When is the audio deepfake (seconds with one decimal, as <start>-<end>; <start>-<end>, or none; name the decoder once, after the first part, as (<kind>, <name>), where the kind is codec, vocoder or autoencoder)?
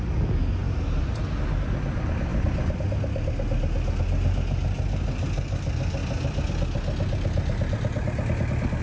none